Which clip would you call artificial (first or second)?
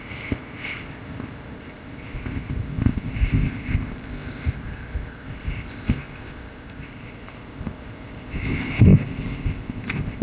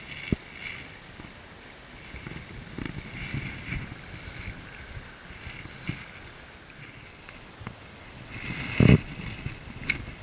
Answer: first